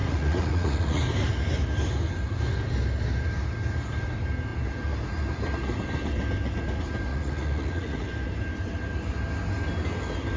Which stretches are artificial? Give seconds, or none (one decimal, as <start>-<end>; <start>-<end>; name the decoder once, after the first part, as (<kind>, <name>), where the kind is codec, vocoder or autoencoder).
0.0-1.0 (vocoder, Vocos); 7.1-8.1